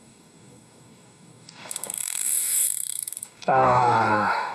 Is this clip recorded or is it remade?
remade